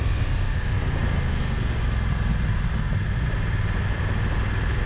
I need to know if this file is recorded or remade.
recorded